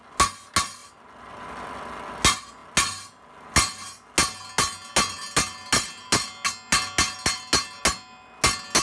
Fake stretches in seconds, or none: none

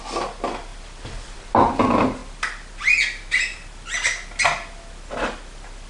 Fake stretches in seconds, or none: none

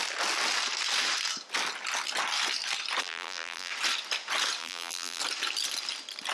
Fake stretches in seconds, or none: 3.0-3.7 (vocoder, BigVGAN v2); 4.6-5.2